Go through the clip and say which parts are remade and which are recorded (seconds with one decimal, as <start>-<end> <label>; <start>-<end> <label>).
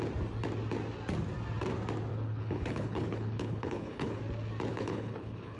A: 0.0-2.1 recorded; 2.1-4.2 remade; 4.2-4.7 recorded; 4.7-5.6 remade